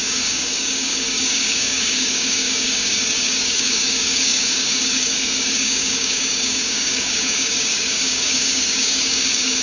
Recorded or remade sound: remade